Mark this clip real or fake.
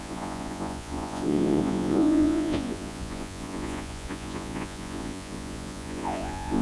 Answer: fake